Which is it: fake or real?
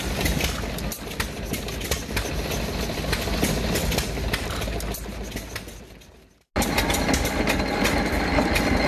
real